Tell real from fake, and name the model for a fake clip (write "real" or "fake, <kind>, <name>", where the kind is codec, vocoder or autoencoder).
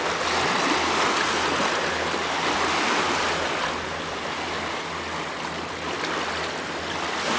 real